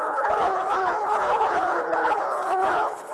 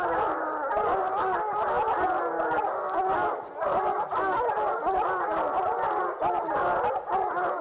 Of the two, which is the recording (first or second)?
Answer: second